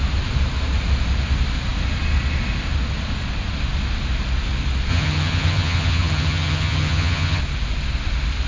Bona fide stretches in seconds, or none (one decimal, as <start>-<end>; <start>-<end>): 0.0-4.9; 7.4-8.5